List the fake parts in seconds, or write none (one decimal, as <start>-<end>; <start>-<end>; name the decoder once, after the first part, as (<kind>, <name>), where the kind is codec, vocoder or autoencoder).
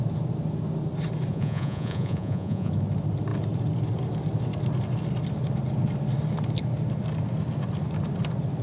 1.3-2.7 (vocoder, Vocos)